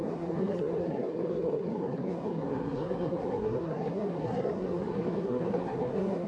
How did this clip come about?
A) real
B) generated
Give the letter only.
B